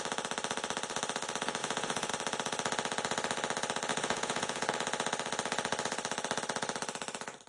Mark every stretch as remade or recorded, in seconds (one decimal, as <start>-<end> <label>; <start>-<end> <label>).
0.0-1.6 recorded; 1.6-2.1 remade; 2.1-3.9 recorded; 3.9-4.7 remade; 4.7-7.5 recorded